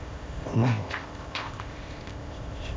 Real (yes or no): no